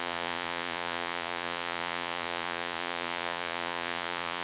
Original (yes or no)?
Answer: no